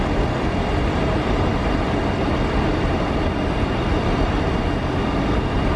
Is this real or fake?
fake